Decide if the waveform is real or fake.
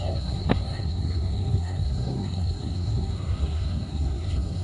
fake